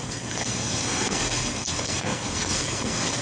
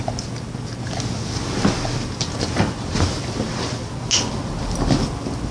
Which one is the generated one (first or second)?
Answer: first